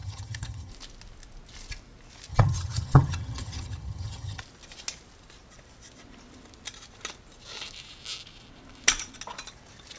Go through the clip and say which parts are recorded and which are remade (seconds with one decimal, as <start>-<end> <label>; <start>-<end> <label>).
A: 0.0-0.7 remade; 0.7-2.3 recorded; 2.3-4.4 remade; 4.4-10.0 recorded